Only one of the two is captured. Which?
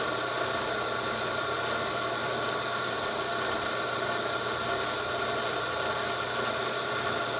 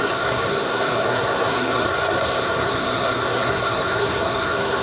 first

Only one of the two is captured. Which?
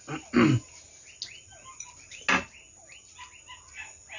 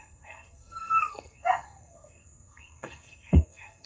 first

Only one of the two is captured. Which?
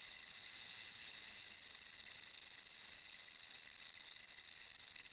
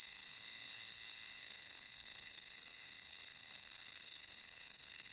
first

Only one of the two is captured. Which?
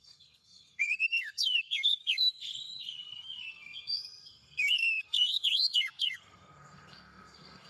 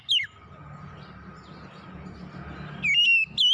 second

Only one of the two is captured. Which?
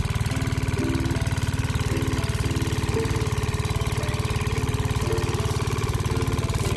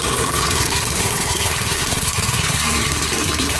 first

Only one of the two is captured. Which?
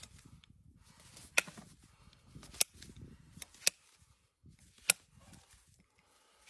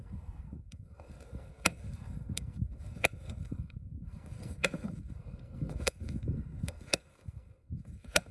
first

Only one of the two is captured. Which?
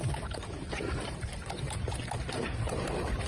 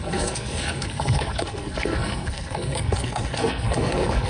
first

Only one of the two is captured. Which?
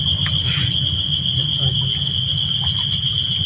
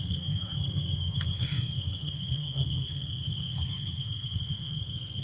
first